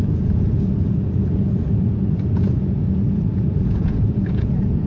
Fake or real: fake